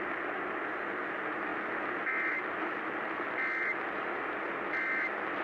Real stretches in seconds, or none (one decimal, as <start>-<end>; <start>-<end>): 0.0-5.4